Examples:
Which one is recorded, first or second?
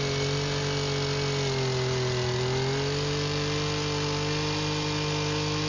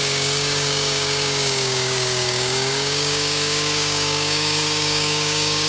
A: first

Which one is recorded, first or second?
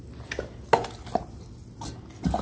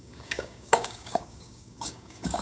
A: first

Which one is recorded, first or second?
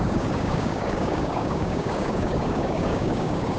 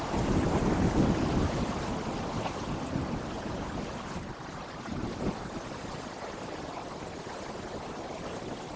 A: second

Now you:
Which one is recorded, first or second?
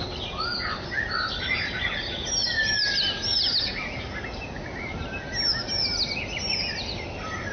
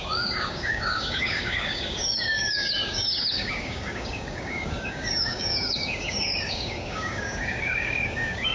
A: first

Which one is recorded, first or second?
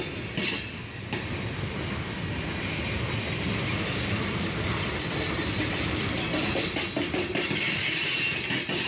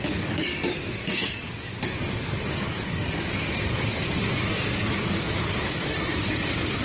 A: first